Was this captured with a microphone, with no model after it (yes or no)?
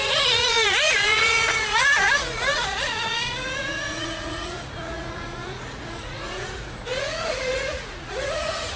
no